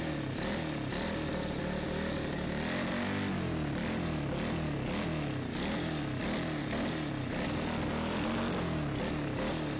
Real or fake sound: real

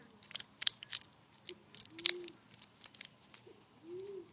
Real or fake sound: real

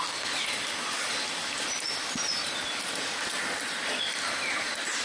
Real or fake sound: real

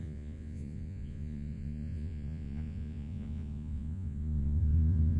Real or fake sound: fake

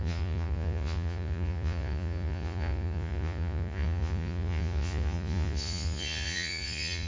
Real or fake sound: fake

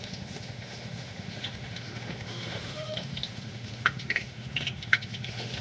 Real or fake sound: fake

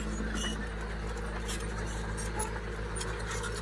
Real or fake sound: real